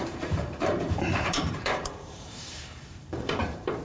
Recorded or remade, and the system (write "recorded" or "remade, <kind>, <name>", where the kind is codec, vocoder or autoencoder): remade, vocoder, BigVGAN v2